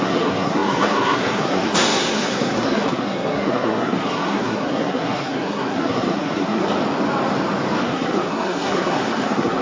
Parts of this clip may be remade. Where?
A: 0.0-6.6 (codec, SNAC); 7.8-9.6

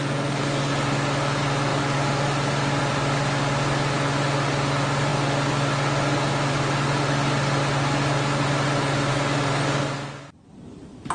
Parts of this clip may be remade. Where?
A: none

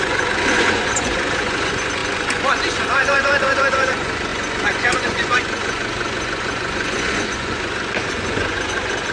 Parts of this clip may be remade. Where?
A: 0.0-9.1 (vocoder, Vocos)

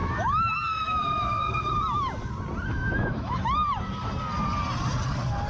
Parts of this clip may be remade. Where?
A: 0.0-1.7 (autoencoder, DAC-VAE); 2.7-3.4

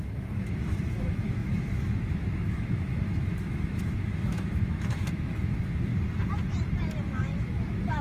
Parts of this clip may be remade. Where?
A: 0.0-5.9 (autoencoder, DAC-VAE); 7.0-8.0

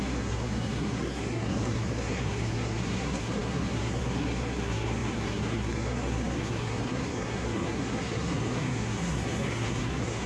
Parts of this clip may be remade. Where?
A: 0.0-10.3 (codec, SNAC)